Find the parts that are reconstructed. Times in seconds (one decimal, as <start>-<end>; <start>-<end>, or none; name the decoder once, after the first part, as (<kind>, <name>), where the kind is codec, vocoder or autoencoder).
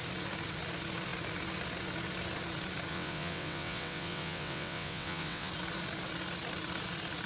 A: 2.9-5.5 (vocoder, WaveNeXt)